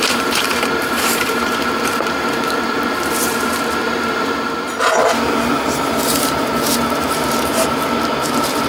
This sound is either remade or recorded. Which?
remade